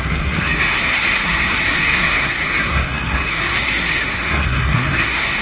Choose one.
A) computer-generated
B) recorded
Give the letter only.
A